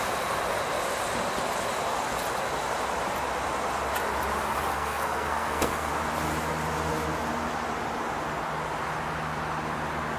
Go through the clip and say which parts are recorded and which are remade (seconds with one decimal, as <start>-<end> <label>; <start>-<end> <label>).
0.0-4.7 recorded; 4.7-5.9 remade; 5.9-10.2 recorded